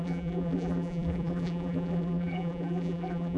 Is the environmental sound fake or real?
fake